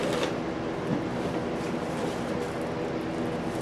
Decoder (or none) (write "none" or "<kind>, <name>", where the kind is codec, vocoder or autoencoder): none